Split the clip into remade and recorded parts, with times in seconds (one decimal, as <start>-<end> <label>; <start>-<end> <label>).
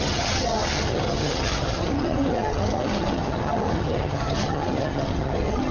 0.0-5.7 remade